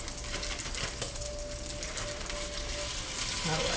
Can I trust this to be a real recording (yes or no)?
yes